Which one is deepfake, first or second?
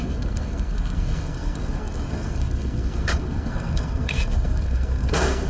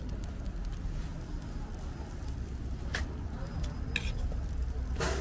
first